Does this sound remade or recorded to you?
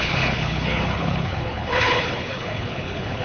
remade